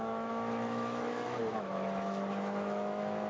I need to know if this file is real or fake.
fake